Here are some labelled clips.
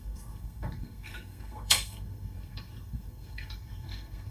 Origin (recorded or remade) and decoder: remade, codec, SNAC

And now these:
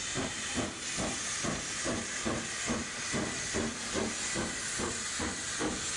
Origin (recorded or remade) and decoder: recorded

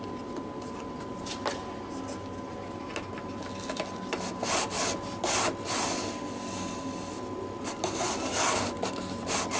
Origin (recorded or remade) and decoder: recorded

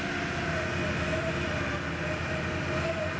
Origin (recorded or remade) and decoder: recorded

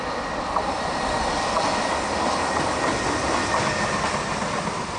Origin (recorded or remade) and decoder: recorded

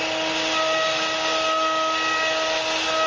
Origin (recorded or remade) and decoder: recorded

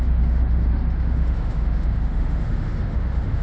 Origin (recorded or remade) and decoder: remade, autoencoder, DAC-VAE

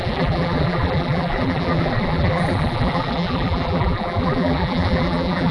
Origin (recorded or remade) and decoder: remade, vocoder, BigVGAN v2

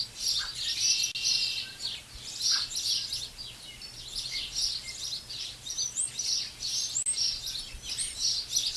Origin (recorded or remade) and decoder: recorded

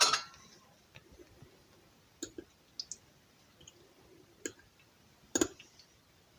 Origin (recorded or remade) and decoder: recorded